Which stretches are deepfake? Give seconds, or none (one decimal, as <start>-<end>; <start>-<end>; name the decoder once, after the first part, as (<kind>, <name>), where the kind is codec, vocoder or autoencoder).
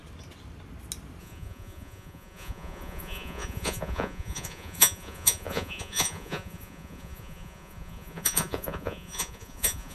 1.2-9.9 (vocoder, Vocos)